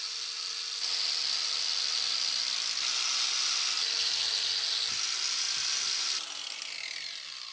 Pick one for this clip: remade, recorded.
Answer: recorded